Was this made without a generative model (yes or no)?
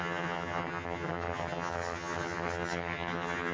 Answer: no